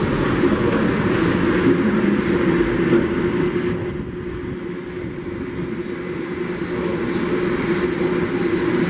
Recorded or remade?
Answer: recorded